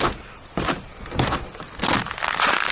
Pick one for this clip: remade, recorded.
recorded